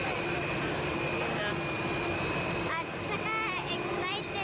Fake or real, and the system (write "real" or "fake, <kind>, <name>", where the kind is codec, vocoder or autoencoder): real